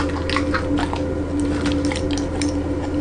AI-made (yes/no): no